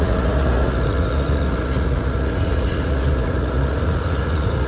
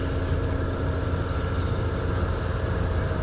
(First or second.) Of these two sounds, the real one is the second